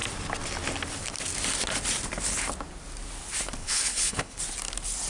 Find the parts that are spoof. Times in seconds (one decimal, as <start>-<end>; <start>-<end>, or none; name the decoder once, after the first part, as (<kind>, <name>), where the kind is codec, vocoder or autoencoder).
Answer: 3.6-4.4 (codec, HILCodec)